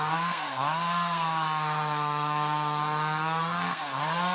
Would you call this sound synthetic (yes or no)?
yes